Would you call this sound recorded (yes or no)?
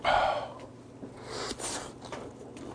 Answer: yes